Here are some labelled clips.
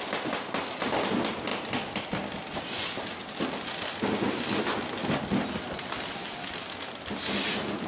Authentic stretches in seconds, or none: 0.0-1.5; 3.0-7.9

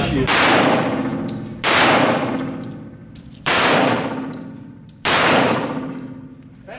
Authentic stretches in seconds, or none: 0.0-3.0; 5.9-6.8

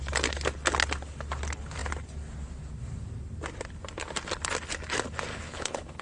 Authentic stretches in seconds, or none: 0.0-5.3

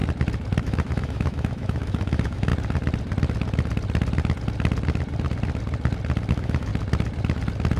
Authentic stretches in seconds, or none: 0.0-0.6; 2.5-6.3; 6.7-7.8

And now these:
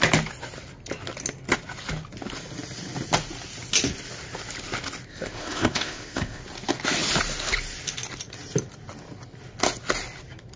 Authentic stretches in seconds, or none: 0.0-5.1; 6.4-10.6

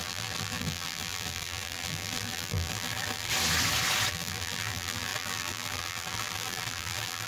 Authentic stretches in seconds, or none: 3.3-4.1

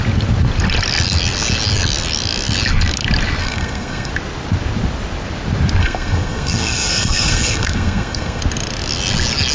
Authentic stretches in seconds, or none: 0.0-3.4; 4.1-5.8; 8.4-9.5

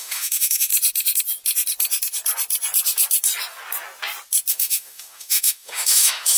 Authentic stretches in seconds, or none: 0.7-4.5